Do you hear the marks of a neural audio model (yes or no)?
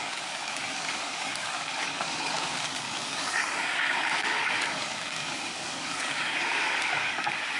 yes